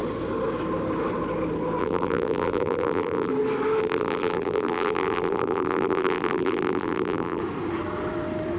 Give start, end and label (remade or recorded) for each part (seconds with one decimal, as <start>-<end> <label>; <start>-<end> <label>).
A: 0.0-1.8 recorded; 1.8-3.3 remade; 3.3-3.8 recorded; 3.8-7.4 remade; 7.4-8.6 recorded